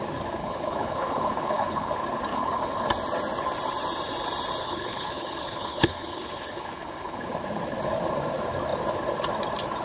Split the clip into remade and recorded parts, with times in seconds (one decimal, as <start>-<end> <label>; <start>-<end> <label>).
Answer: 0.0-0.4 recorded; 0.4-1.9 remade; 1.9-2.3 recorded; 2.3-2.9 remade; 2.9-4.6 recorded; 4.6-7.2 remade; 7.2-9.8 recorded

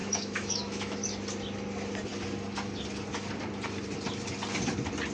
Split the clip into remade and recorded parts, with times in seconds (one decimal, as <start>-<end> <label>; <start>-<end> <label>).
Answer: 0.0-1.0 remade; 1.0-5.1 recorded

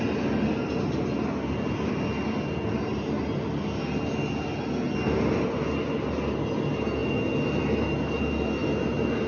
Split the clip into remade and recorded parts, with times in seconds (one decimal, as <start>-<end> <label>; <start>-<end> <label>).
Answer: 0.0-9.3 recorded

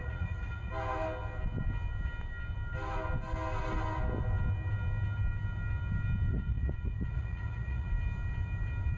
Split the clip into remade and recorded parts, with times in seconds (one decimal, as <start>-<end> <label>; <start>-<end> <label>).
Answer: 0.0-0.7 remade; 0.7-6.3 recorded; 6.3-7.9 remade; 7.9-9.0 recorded

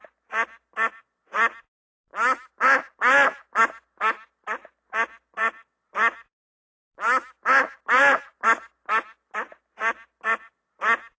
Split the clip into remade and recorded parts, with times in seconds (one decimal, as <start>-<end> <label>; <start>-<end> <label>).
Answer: 0.0-11.2 recorded

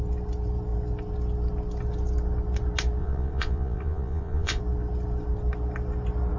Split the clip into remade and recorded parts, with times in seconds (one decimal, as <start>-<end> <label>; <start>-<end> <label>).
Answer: 0.0-3.0 recorded; 3.0-4.6 remade; 4.6-6.4 recorded

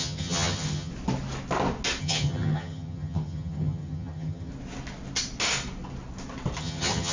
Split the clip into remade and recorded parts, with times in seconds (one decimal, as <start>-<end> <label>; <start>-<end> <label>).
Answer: 0.0-0.9 remade; 0.9-2.0 recorded; 2.0-4.5 remade; 4.5-6.6 recorded; 6.6-7.1 remade

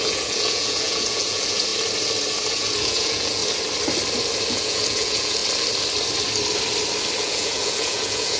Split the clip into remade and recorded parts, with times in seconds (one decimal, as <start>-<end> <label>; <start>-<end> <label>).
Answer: 0.0-1.7 remade; 1.7-2.5 recorded; 2.5-3.4 remade; 3.4-4.5 recorded; 4.5-5.4 remade; 5.4-7.2 recorded; 7.2-8.4 remade